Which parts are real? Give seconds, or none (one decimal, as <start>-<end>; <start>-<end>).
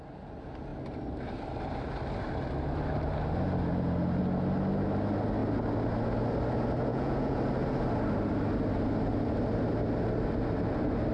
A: 0.0-6.9; 7.4-11.1